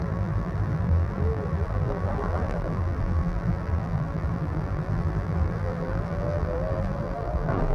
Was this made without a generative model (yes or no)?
no